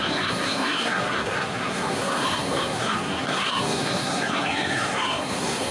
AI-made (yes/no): yes